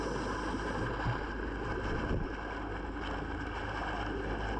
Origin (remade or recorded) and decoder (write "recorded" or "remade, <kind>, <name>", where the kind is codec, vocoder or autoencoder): recorded